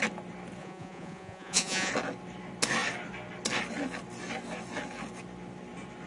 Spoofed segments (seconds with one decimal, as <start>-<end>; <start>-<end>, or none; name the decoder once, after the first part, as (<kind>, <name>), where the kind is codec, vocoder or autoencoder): 0.6-1.9 (vocoder, Vocos)